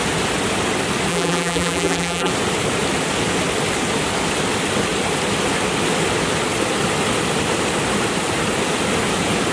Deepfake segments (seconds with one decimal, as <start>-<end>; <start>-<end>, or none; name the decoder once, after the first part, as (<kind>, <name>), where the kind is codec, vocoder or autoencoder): 1.1-2.3 (vocoder, BigVGAN v2)